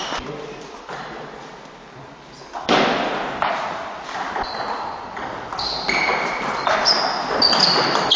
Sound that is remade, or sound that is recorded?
recorded